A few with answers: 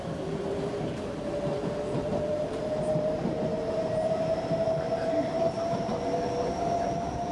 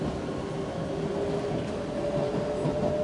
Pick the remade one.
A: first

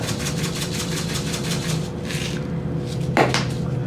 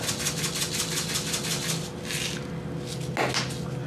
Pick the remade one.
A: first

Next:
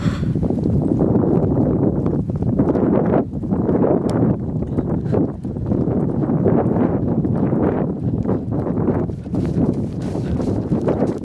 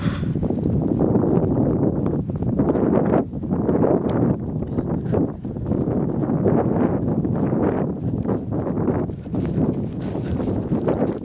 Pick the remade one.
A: first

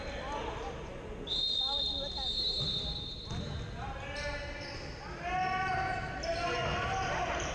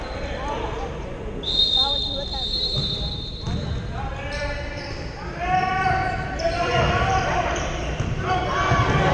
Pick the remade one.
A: second